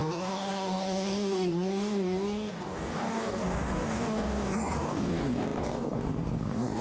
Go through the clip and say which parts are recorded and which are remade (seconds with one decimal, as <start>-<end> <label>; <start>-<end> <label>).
0.0-6.8 remade